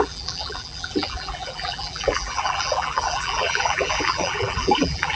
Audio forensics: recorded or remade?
remade